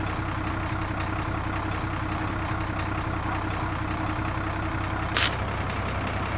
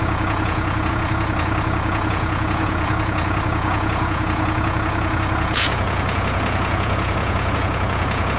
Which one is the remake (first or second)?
second